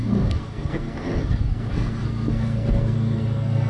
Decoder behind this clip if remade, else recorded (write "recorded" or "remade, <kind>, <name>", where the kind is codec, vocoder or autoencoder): remade, codec, SNAC